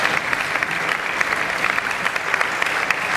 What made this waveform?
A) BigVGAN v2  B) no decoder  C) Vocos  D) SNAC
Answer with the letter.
B